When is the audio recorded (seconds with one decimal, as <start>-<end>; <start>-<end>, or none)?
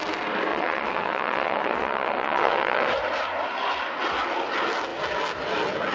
0.0-0.5; 2.9-5.9